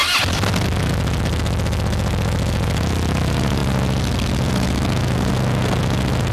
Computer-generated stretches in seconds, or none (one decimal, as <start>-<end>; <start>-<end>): none

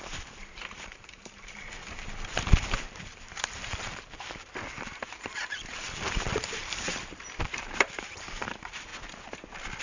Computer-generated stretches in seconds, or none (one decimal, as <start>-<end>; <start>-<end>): 0.0-8.9

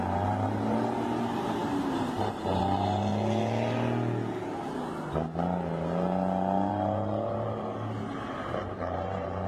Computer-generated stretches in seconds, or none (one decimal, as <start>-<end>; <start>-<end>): 0.0-3.1; 6.7-9.5

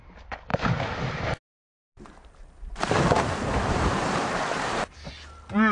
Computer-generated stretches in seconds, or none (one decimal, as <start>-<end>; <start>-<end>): 1.7-5.1

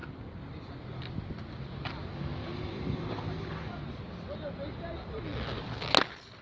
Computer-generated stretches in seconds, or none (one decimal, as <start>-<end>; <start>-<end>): 2.4-3.5

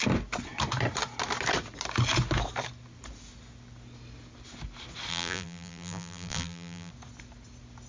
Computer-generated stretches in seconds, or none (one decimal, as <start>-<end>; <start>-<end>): 5.1-6.9

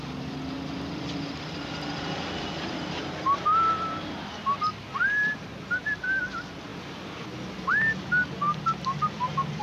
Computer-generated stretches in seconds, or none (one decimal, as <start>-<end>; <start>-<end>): none

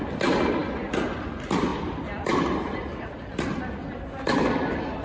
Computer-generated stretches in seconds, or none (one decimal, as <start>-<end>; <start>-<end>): none